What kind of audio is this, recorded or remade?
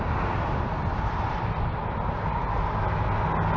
recorded